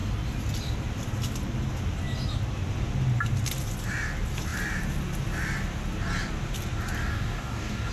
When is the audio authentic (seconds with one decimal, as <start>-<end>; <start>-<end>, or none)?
0.0-7.0